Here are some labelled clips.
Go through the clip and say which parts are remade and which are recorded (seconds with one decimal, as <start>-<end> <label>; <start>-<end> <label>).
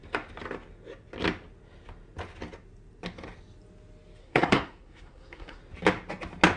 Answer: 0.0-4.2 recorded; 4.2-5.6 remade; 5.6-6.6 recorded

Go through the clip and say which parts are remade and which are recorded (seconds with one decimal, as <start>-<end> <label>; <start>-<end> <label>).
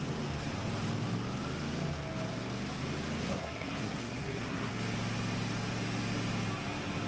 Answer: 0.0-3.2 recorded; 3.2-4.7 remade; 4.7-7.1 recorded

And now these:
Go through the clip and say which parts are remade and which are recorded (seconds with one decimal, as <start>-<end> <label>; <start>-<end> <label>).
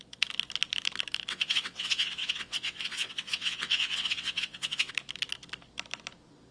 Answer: 0.0-1.3 recorded; 1.3-4.9 remade; 4.9-6.5 recorded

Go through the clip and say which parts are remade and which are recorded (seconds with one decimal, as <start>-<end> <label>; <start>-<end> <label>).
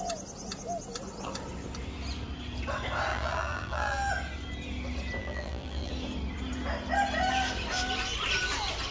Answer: 0.0-3.1 recorded; 3.1-4.1 remade; 4.1-5.2 recorded; 5.2-5.9 remade; 5.9-8.9 recorded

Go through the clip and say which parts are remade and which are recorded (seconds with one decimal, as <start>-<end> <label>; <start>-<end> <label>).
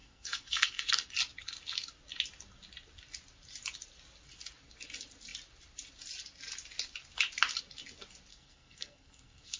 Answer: 0.0-0.9 remade; 0.9-8.3 recorded; 8.3-9.6 remade